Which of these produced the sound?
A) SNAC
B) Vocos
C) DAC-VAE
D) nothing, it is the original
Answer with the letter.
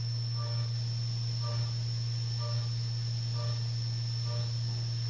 D